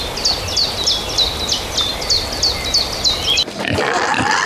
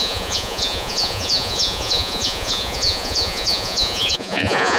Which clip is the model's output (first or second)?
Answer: second